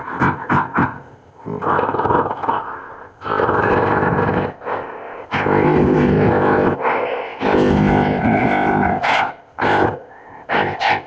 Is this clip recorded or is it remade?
remade